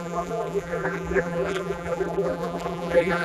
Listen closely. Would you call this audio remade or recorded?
remade